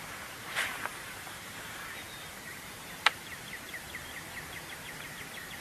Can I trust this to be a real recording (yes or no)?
no